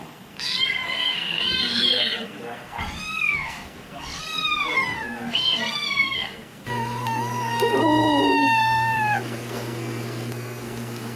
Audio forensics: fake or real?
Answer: fake